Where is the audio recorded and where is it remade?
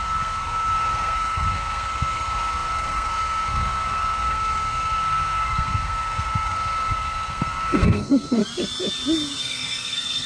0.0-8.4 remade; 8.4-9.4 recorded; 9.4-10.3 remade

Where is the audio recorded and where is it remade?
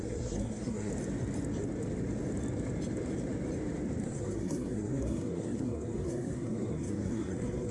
0.0-0.9 remade; 0.9-4.0 recorded; 4.0-7.7 remade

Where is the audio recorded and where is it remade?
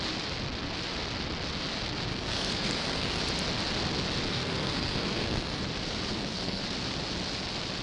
0.0-2.1 recorded; 2.1-3.2 remade; 3.2-4.3 recorded; 4.3-5.6 remade; 5.6-6.1 recorded; 6.1-6.6 remade; 6.6-7.8 recorded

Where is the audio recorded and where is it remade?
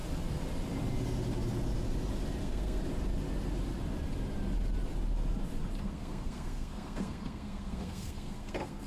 0.0-2.4 recorded; 2.4-2.8 remade; 2.8-5.8 recorded; 5.8-8.9 remade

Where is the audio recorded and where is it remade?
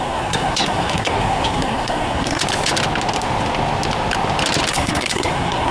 0.0-2.4 remade; 2.4-4.7 recorded; 4.7-5.7 remade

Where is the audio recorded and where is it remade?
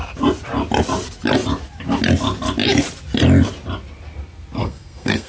0.0-4.6 recorded; 4.6-5.3 remade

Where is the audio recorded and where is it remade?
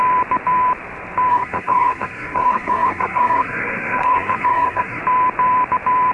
0.0-1.3 recorded; 1.3-5.0 remade; 5.0-6.1 recorded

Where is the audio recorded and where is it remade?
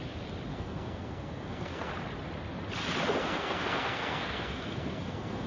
0.0-0.5 recorded; 0.5-1.9 remade; 1.9-3.2 recorded; 3.2-5.5 remade